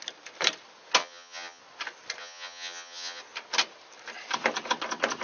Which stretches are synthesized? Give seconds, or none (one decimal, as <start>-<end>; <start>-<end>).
1.0-1.6; 2.2-3.2